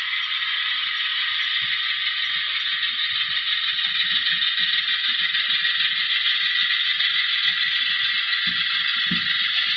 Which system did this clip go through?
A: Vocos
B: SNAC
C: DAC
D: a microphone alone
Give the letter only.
D